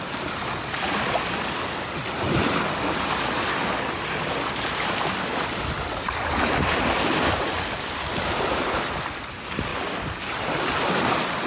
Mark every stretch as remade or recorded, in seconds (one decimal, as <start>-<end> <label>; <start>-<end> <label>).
0.0-11.5 recorded